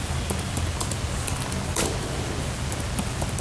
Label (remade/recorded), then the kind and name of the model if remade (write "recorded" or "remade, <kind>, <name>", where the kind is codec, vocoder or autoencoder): recorded